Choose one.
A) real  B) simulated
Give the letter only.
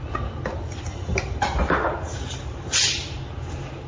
A